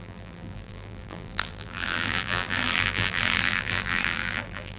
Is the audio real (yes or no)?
no